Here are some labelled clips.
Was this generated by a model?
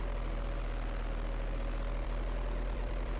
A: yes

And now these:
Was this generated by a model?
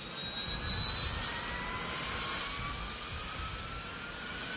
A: no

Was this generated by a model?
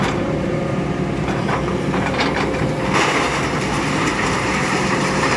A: yes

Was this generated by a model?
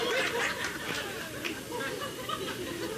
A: yes